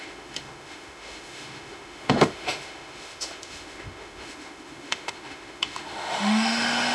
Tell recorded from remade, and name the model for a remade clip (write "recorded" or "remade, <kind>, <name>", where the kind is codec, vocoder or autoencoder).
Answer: remade, autoencoder, DAC-VAE